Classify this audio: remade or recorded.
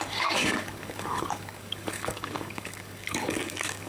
remade